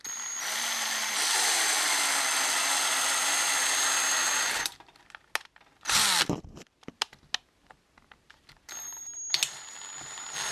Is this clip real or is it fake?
real